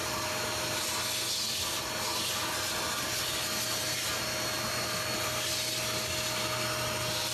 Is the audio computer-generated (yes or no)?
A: no